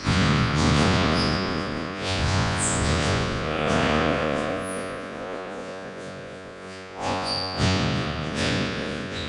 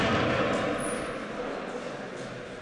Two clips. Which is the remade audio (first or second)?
first